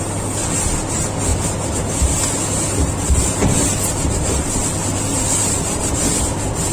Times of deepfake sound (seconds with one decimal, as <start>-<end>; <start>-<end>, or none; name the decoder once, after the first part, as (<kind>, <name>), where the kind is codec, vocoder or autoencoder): none